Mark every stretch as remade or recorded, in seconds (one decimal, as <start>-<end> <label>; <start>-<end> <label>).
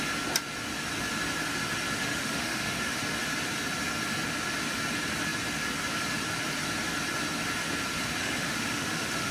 0.0-2.0 recorded; 2.0-3.0 remade; 3.0-8.2 recorded; 8.2-9.3 remade